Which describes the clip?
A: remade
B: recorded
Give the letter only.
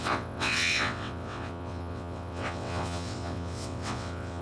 A